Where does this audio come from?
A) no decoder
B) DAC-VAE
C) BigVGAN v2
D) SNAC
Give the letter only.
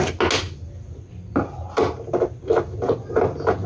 A